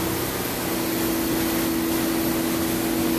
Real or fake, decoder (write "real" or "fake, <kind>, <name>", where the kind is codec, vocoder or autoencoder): real